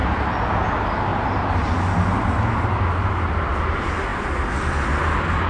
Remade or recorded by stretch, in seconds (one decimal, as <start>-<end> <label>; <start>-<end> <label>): 0.0-5.5 recorded